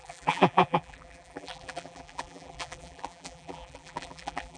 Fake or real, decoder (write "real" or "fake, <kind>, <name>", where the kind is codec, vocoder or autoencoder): fake, vocoder, BigVGAN v2